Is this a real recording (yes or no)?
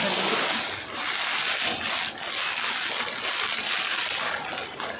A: yes